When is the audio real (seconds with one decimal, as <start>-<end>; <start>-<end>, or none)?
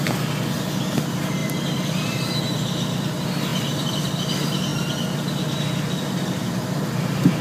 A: 0.0-1.4; 2.3-3.5; 4.0-7.4